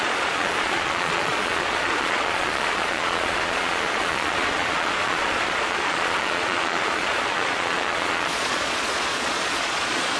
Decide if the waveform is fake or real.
fake